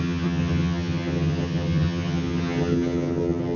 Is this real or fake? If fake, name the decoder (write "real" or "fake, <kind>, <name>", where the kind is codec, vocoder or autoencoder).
fake, vocoder, HiFi-GAN